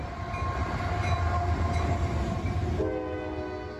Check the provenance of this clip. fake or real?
real